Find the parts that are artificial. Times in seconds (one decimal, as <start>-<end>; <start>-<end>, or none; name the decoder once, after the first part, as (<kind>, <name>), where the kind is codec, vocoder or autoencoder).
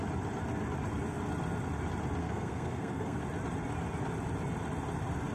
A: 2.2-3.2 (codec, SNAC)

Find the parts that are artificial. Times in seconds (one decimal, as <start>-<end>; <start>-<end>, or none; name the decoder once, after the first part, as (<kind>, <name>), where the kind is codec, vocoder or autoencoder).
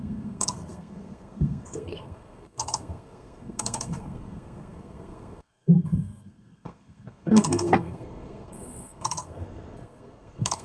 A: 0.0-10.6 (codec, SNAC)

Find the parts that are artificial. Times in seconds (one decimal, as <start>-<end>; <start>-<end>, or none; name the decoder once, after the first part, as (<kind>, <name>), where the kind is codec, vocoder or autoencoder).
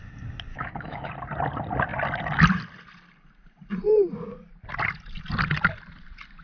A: 0.5-1.1 (autoencoder, DAC-VAE)